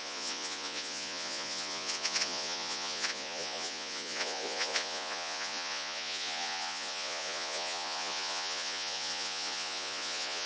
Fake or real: fake